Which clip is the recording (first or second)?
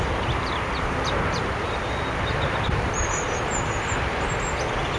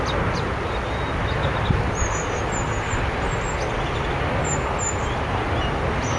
second